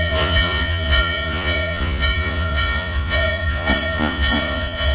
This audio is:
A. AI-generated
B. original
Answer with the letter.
A